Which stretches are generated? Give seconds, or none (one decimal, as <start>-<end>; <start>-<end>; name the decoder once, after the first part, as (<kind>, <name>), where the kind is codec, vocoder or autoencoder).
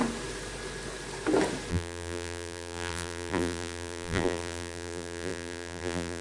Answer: 1.7-6.2 (vocoder, BigVGAN v2)